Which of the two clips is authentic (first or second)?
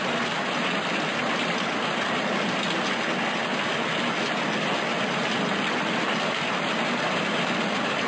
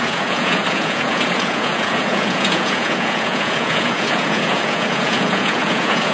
first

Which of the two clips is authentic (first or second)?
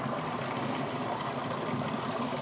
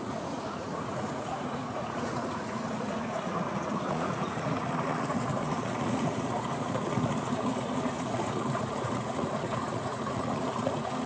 first